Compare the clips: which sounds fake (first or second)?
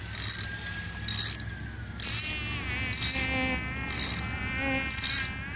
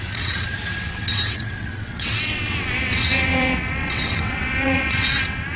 second